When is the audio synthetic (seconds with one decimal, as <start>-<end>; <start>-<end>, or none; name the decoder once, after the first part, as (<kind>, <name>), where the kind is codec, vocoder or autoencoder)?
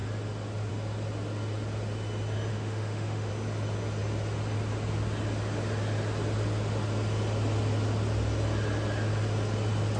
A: 2.5-3.3 (autoencoder, DAC-VAE)